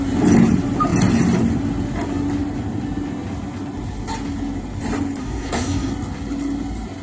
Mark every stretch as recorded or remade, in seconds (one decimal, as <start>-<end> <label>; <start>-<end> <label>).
0.0-5.2 recorded; 5.2-5.9 remade; 5.9-7.0 recorded